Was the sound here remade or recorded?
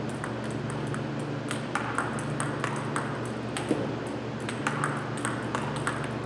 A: recorded